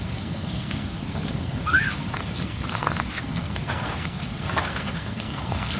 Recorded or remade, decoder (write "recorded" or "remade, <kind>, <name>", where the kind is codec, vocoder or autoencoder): remade, codec, SNAC